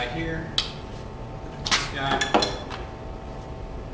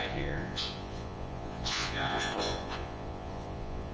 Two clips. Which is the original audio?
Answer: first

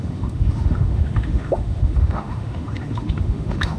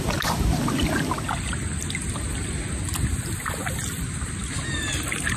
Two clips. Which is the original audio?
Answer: second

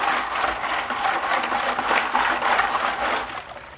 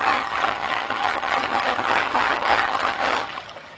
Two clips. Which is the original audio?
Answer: first